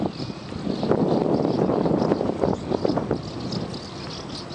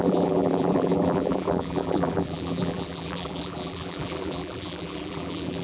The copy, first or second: second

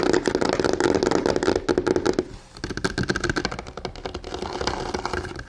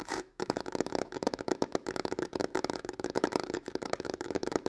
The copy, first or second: second